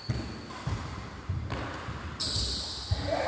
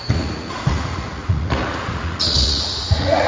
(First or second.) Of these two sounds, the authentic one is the first